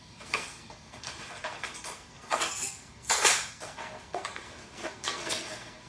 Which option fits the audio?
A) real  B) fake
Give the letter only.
B